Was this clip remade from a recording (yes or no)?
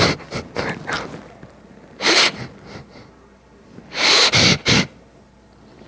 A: no